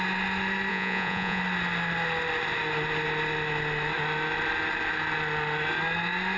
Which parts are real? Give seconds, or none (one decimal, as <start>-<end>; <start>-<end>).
0.0-0.7; 1.4-6.4